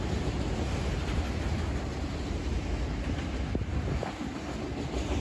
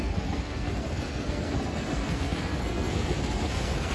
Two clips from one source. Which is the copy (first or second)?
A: second